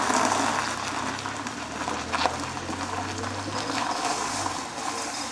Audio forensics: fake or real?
real